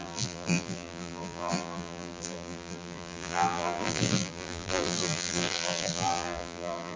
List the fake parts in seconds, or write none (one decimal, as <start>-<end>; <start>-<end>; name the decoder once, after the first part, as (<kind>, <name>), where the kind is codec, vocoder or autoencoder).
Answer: 0.0-7.0 (vocoder, BigVGAN v2)